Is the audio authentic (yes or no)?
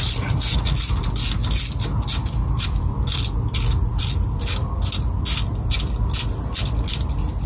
yes